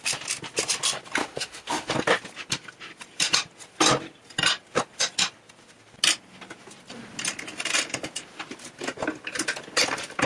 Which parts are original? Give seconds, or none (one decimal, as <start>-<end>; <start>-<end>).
0.0-1.2; 1.9-10.3

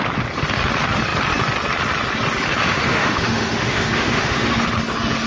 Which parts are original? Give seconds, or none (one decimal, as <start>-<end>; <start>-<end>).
0.0-2.6; 4.6-5.3

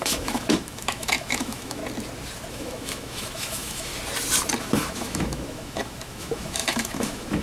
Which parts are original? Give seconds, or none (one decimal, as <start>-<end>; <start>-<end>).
1.8-2.5; 3.9-4.6

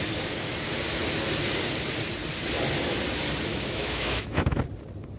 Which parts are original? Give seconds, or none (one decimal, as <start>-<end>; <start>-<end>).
0.0-3.5; 4.6-5.2

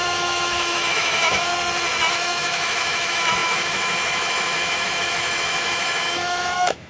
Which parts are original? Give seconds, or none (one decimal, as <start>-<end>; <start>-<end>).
1.5-2.1